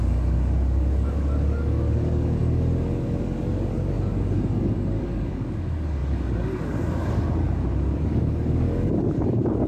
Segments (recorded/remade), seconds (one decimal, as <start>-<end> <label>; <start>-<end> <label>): 0.0-9.7 remade